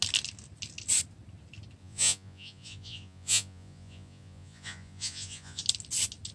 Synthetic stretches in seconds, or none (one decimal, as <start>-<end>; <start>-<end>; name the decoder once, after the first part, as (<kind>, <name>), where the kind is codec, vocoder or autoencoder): 1.8-5.6 (vocoder, Vocos)